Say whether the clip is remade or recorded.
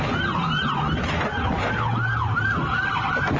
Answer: recorded